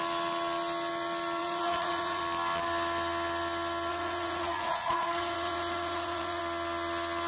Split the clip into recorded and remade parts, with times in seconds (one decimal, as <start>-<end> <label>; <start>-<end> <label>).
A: 0.0-1.4 recorded; 1.4-2.2 remade; 2.2-3.9 recorded; 3.9-6.4 remade; 6.4-7.3 recorded